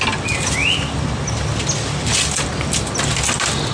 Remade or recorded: recorded